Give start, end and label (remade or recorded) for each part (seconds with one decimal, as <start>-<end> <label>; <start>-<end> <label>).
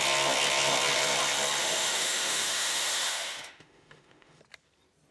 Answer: 0.0-1.6 recorded; 1.6-4.4 remade; 4.4-5.1 recorded